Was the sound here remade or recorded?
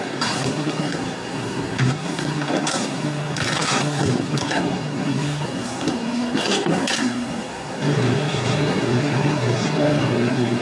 remade